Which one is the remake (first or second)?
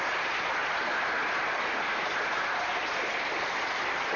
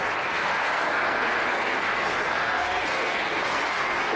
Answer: second